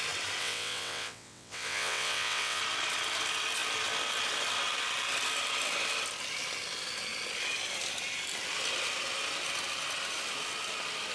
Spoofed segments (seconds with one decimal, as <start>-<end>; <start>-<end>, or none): 0.4-2.6